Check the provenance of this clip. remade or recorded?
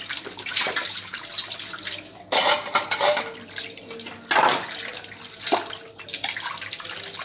recorded